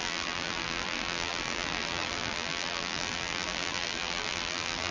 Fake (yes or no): yes